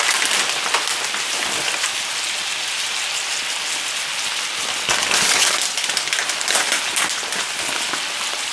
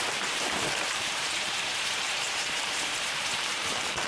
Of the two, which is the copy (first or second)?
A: second